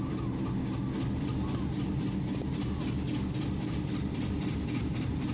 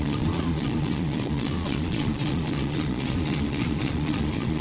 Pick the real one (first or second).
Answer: first